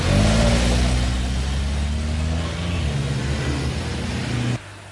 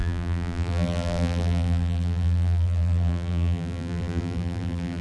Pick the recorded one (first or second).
first